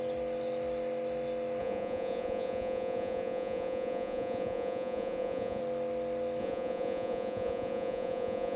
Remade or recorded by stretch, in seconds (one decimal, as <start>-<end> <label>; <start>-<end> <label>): 0.0-1.6 recorded; 1.6-5.6 remade; 5.6-6.4 recorded; 6.4-8.6 remade